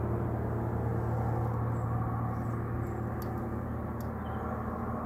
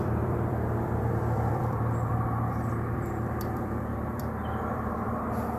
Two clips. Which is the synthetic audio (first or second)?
second